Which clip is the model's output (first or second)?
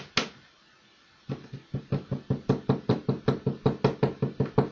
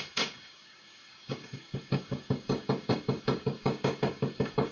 second